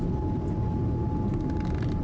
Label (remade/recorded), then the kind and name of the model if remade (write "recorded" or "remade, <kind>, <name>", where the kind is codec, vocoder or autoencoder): recorded